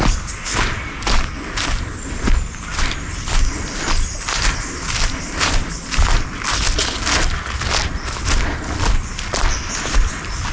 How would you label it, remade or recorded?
recorded